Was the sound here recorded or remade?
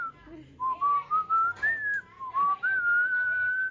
recorded